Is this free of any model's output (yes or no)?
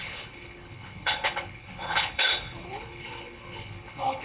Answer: no